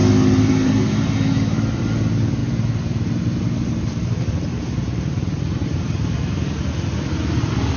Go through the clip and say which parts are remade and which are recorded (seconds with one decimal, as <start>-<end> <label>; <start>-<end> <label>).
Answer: 0.0-0.7 remade; 0.7-2.4 recorded; 2.4-7.1 remade; 7.1-7.8 recorded